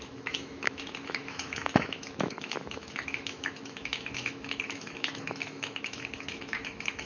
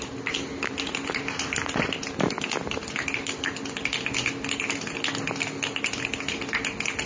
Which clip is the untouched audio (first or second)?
second